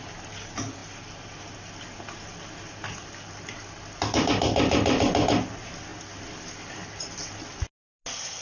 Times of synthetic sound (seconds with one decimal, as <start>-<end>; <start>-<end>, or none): none